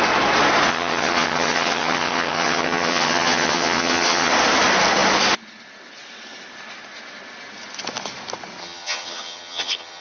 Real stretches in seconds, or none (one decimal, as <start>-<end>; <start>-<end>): 0.0-0.7; 4.3-8.6